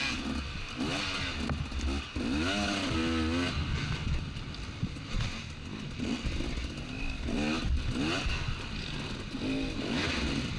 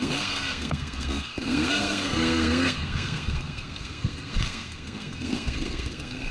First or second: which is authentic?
first